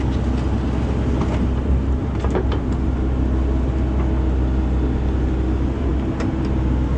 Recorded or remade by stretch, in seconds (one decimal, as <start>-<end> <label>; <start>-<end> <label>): 0.0-7.0 recorded